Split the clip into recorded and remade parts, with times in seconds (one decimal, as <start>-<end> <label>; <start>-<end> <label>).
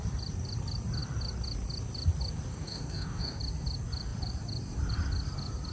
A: 0.0-2.5 recorded; 2.5-3.4 remade; 3.4-5.7 recorded